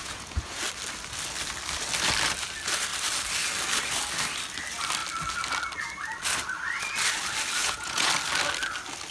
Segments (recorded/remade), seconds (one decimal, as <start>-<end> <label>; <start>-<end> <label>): 0.0-0.6 remade; 0.6-7.6 recorded; 7.6-8.1 remade; 8.1-9.1 recorded